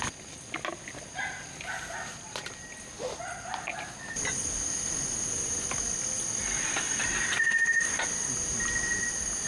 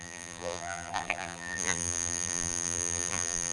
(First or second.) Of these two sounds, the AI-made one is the second